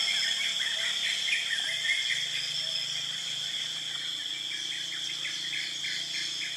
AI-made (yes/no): no